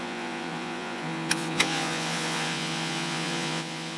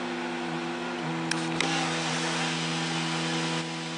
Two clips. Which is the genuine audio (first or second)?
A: second